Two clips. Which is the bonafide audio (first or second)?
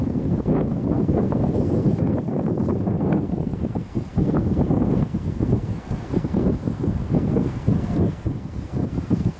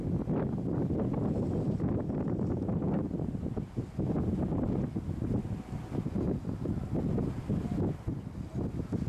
second